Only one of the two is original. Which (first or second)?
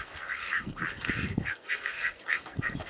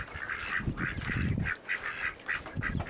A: second